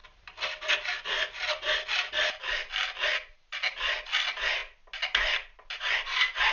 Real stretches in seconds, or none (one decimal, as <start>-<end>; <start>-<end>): 3.9-6.5